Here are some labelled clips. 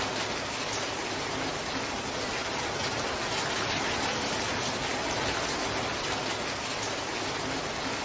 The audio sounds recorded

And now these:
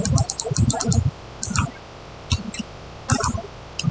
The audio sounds recorded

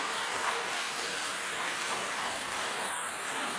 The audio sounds remade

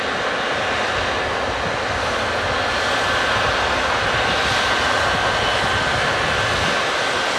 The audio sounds recorded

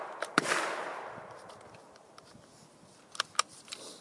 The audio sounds recorded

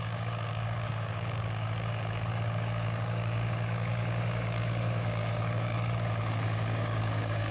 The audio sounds remade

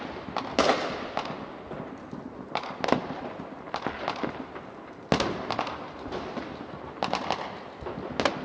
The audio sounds recorded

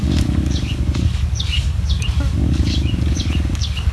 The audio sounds remade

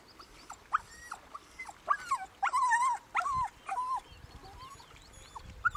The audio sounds recorded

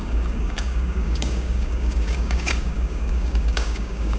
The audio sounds remade